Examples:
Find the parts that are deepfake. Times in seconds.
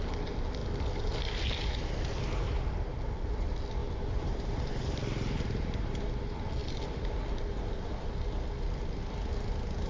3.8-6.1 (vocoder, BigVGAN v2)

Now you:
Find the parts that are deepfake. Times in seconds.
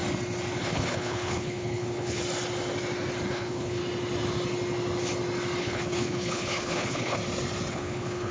0.6-2.2 (codec, HILCodec); 3.3-3.8; 5.6-7.2; 7.7-8.3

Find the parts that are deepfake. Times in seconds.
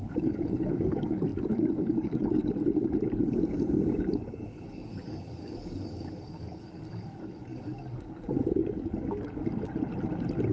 0.0-9.4 (codec, DAC)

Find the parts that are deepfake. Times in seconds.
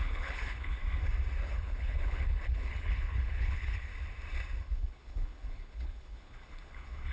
0.0-0.8 (codec, HILCodec); 1.4-3.9; 4.6-7.1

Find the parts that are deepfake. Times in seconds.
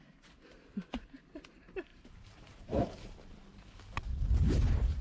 1.9-5.0 (vocoder, BigVGAN v2)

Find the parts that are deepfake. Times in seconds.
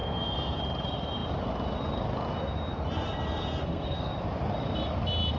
0.0-0.6 (codec, SNAC); 3.6-4.1